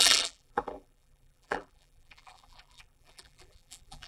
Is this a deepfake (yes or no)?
yes